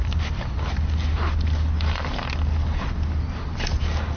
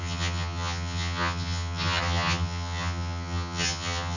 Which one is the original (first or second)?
first